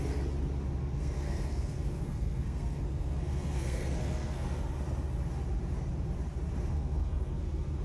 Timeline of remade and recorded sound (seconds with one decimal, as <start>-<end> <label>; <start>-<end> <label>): 0.0-0.8 recorded; 0.8-4.6 remade; 4.6-6.7 recorded; 6.7-7.8 remade